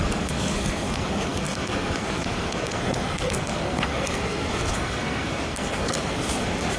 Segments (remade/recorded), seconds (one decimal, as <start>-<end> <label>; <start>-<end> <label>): 0.0-6.8 remade